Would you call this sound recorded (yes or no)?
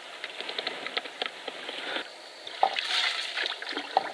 yes